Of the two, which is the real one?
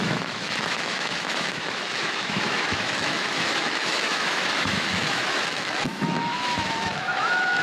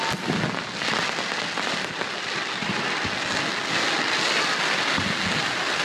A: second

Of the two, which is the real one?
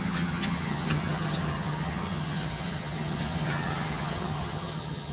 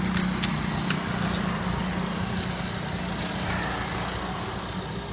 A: second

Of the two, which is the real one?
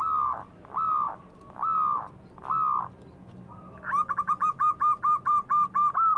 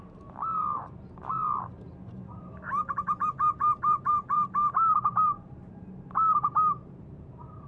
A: first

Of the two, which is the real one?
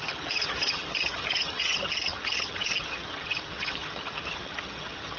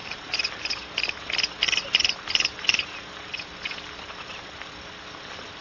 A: second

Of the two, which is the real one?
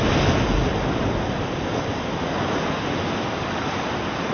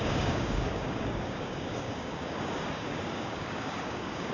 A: first